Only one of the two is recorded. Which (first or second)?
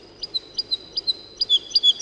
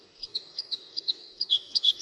first